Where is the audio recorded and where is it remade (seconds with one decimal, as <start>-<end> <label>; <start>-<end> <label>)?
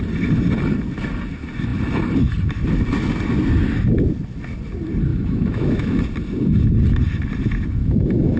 0.0-5.1 recorded; 5.1-6.0 remade; 6.0-7.8 recorded; 7.8-8.4 remade